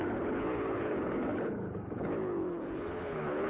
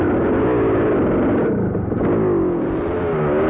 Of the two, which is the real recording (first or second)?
second